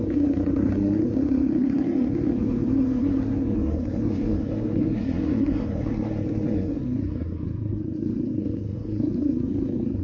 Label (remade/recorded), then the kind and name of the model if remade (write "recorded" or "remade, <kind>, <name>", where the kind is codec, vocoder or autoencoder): remade, codec, SNAC